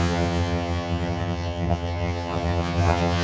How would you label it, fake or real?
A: fake